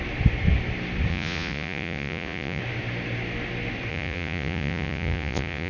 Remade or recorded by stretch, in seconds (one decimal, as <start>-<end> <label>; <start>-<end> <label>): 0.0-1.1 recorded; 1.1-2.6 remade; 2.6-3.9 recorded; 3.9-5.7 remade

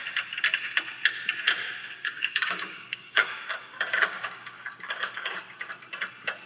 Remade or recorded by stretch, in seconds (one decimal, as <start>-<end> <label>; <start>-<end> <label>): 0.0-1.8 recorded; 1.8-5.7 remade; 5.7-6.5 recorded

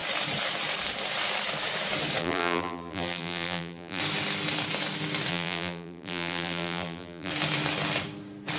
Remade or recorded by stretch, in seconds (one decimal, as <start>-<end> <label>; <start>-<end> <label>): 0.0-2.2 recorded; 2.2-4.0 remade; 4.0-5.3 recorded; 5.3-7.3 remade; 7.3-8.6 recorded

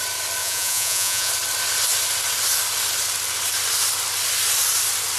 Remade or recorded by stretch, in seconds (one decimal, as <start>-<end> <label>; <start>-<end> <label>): 0.0-0.4 recorded; 0.4-1.3 remade; 1.3-5.2 recorded

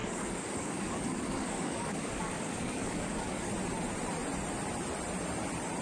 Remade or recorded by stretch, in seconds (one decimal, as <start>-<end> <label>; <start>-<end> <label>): 0.0-3.5 remade; 3.5-5.8 recorded

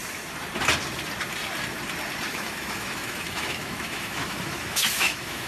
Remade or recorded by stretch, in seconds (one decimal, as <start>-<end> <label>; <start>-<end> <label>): 0.0-2.3 recorded; 2.3-5.5 remade

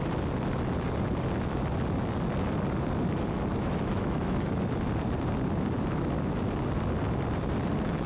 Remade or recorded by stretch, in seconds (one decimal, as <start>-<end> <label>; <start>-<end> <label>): 0.0-3.5 recorded; 3.5-4.5 remade; 4.5-8.1 recorded

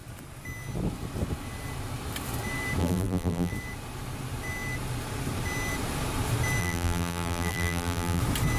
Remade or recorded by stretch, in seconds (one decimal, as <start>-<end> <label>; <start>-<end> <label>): 0.0-2.8 recorded; 2.8-3.5 remade; 3.5-6.6 recorded; 6.6-8.2 remade; 8.2-8.6 recorded